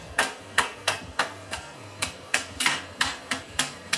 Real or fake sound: fake